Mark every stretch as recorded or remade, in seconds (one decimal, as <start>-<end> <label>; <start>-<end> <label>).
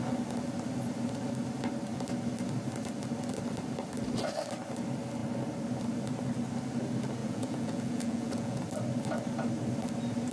0.0-7.2 recorded; 7.2-8.6 remade; 8.6-10.3 recorded